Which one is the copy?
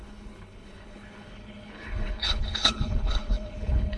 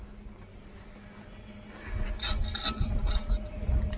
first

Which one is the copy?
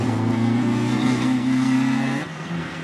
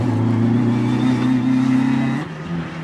first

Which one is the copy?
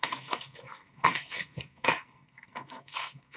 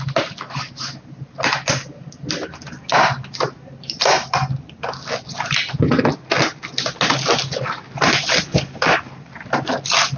first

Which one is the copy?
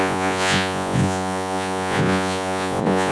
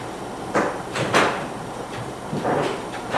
first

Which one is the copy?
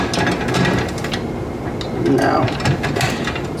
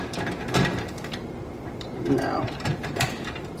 second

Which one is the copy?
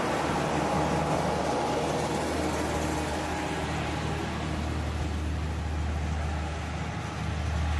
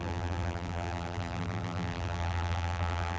second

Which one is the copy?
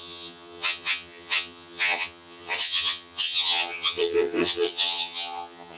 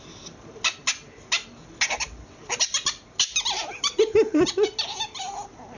first